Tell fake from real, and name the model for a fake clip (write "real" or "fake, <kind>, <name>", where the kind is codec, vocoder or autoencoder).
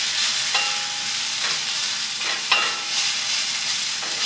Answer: real